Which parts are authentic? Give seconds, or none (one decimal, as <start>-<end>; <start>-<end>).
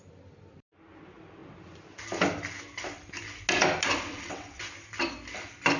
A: 0.0-4.1; 4.6-5.8